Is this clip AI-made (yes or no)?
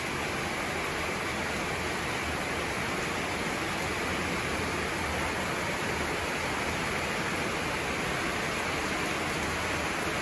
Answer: no